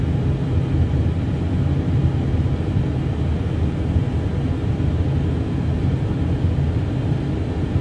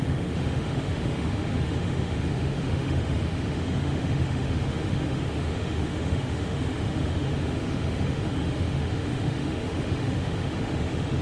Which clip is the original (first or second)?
first